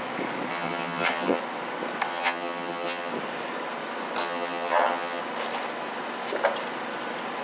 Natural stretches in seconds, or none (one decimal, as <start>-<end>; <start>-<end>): 0.0-0.5; 1.4-2.1; 3.1-4.2; 5.2-7.4